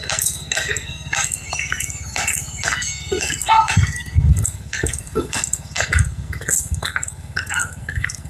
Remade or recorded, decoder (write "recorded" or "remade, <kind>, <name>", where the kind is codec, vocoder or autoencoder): remade, codec, SNAC